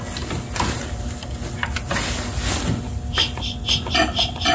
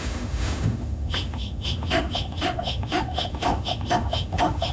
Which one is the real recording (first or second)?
first